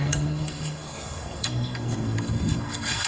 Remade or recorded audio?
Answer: remade